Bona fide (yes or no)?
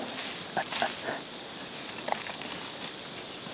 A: yes